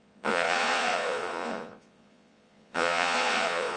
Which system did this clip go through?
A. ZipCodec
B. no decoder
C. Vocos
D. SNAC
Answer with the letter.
C